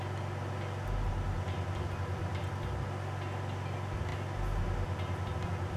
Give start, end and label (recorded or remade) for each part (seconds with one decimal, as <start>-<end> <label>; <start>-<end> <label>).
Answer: 0.0-5.8 recorded